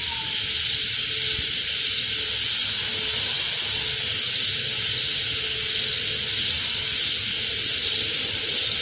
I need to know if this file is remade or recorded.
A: recorded